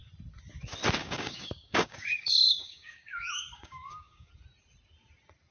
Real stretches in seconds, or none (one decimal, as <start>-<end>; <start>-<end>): 0.0-1.0; 4.3-5.5